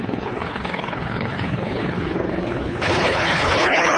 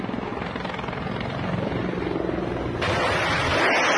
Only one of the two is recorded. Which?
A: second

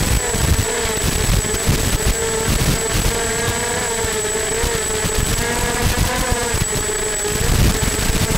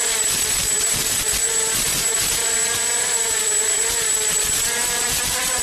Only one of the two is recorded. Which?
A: first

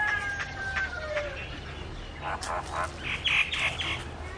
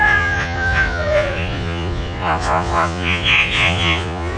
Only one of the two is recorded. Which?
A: first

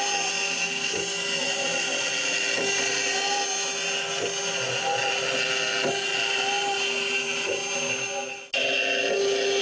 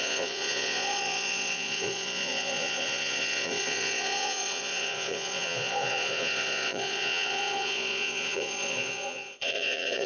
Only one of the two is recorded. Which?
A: first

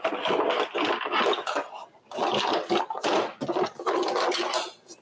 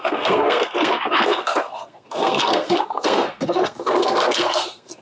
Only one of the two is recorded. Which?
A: first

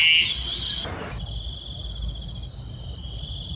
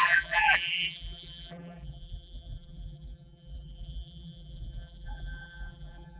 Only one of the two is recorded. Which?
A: first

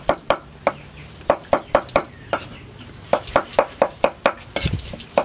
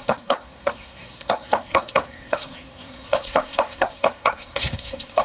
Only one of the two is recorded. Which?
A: first